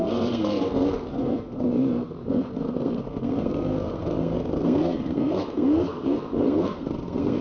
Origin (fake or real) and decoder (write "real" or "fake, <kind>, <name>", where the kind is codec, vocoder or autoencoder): fake, codec, SNAC